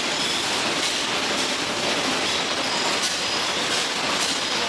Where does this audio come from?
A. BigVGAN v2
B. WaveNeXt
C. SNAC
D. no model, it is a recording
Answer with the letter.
D